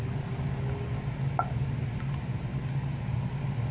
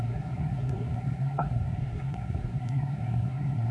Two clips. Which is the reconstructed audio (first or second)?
second